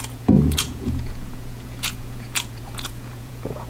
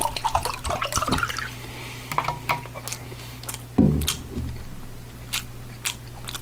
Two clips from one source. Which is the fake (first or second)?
first